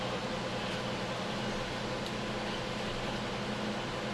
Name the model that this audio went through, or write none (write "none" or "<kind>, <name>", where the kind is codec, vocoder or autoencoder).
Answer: none